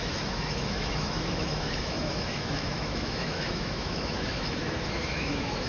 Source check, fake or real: fake